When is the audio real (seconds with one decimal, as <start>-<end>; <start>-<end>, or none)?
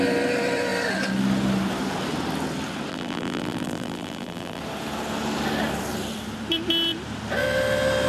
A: 0.0-2.9; 4.6-8.1